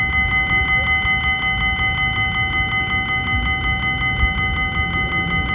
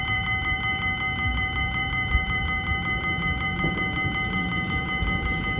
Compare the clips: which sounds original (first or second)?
first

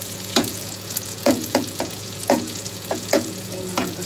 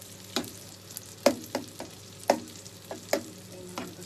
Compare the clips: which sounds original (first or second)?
second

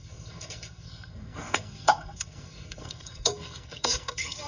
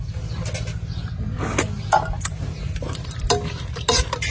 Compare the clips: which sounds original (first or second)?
second